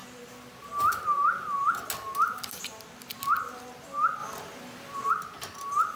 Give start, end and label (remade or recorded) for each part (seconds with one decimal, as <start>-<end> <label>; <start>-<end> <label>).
0.0-6.0 recorded